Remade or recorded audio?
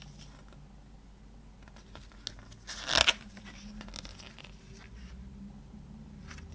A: recorded